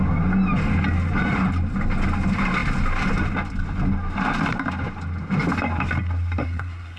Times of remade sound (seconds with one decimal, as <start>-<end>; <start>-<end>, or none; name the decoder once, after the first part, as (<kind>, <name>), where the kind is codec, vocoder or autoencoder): 6.4-7.0 (codec, SNAC)